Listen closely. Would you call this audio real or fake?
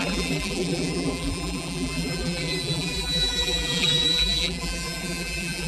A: fake